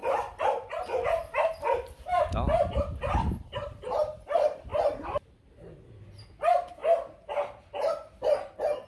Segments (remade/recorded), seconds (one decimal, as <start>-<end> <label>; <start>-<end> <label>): 0.0-4.7 recorded; 4.7-5.3 remade; 5.3-8.9 recorded